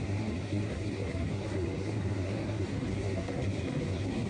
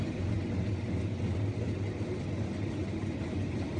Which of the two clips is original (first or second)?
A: second